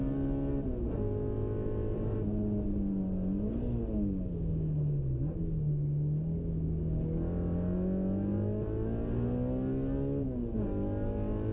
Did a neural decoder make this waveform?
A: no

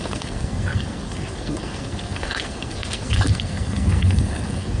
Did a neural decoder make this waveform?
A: yes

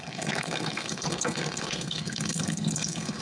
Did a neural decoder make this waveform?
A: yes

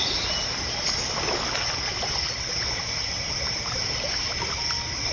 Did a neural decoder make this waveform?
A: no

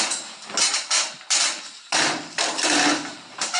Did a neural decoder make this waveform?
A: no